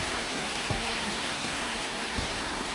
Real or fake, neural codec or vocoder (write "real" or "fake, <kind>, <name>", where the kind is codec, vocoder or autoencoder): fake, codec, SNAC